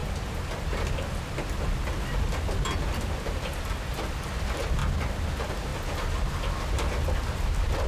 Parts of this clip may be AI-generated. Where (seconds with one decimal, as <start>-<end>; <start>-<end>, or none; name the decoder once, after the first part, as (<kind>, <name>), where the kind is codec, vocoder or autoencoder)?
none